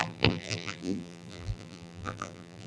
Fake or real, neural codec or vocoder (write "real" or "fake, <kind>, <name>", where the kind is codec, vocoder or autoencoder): fake, vocoder, BigVGAN v2